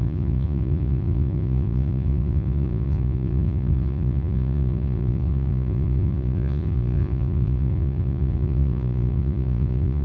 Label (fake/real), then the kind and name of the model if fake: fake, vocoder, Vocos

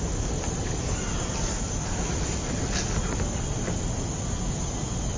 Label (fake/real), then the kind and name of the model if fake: real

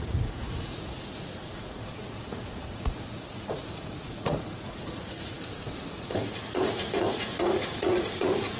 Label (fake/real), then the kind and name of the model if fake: fake, vocoder, Vocos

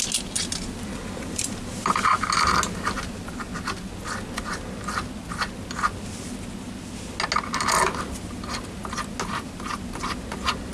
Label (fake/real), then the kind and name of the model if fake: real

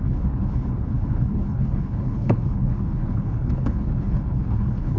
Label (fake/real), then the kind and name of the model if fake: fake, codec, HILCodec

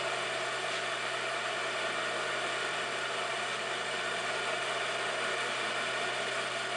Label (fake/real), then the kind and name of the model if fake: real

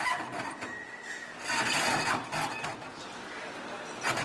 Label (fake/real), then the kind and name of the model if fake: real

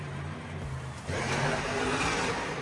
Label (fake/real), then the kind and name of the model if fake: fake, vocoder, BigVGAN v2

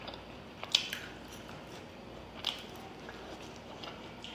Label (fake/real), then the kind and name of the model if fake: real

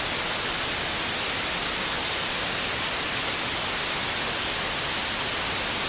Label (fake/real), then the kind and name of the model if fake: real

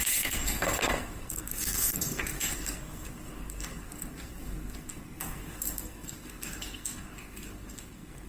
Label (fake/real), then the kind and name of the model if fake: fake, codec, SNAC